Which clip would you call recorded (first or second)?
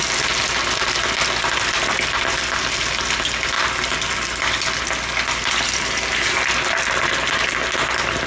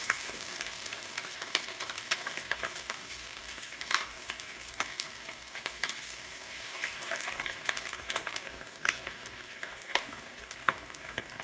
first